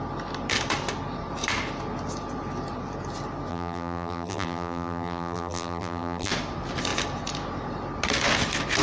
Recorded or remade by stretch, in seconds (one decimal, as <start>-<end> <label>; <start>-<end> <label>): 0.0-3.5 recorded; 3.5-6.3 remade; 6.3-8.8 recorded